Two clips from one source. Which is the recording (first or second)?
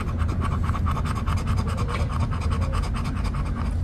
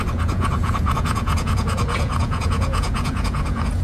first